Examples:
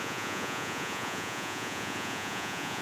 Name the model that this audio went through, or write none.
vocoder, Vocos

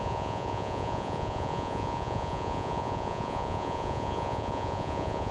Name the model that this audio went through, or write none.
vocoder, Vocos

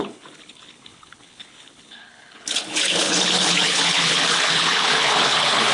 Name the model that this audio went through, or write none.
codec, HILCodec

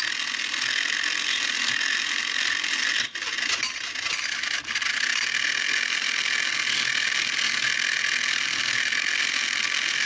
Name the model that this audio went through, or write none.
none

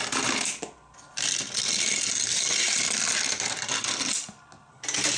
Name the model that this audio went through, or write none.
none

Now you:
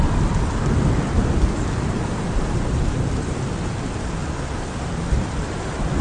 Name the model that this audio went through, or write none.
none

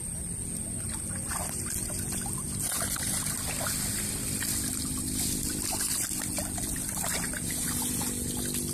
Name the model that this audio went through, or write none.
none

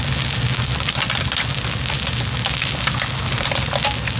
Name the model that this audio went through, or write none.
none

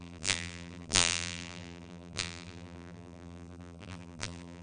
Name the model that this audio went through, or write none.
vocoder, BigVGAN v2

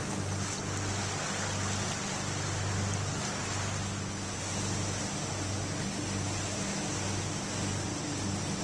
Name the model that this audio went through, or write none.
none